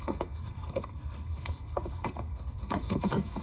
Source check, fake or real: fake